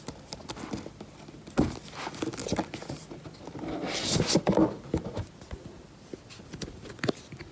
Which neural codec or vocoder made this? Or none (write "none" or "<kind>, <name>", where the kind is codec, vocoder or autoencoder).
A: none